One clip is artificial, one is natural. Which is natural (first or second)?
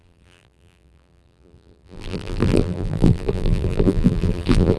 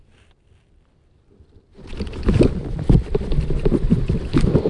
second